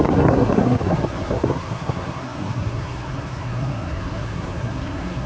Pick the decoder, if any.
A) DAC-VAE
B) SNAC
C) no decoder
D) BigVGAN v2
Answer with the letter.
B